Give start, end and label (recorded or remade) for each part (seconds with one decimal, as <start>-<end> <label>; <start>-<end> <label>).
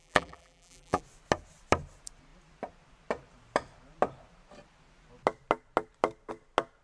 0.0-1.0 remade; 1.0-6.8 recorded